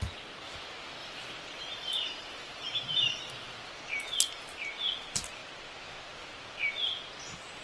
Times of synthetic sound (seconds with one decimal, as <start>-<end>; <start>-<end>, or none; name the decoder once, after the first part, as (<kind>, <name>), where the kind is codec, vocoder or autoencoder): 1.0-3.3 (vocoder, BigVGAN v2)